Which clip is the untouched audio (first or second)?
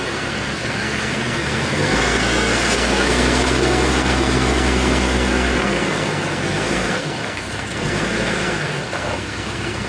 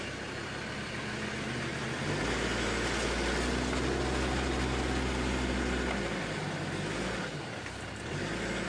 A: second